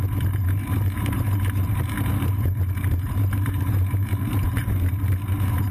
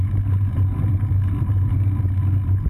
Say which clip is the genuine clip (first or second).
second